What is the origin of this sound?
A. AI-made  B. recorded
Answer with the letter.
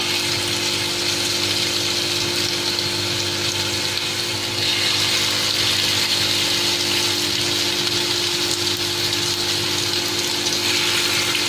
B